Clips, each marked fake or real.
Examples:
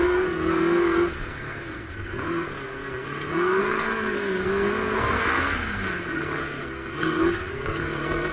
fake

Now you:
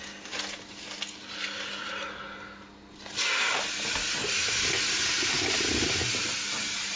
real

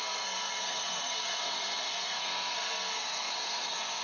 fake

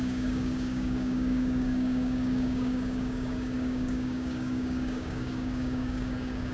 fake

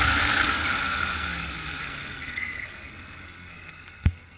fake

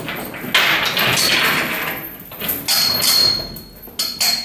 real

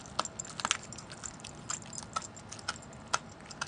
real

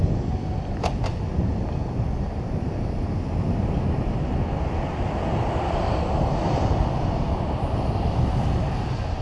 real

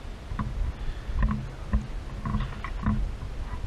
real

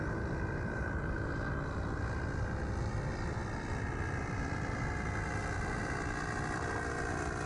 fake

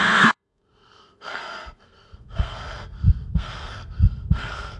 fake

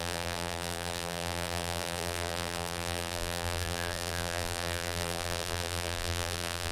fake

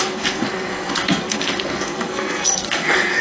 fake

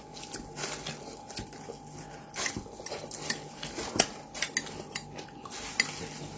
real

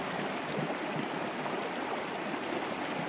real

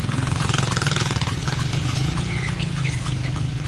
fake